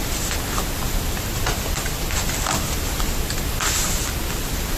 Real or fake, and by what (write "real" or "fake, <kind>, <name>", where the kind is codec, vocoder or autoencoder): real